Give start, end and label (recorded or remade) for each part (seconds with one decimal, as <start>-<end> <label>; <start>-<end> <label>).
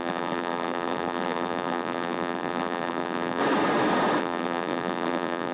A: 0.0-3.4 remade; 3.4-4.2 recorded; 4.2-5.5 remade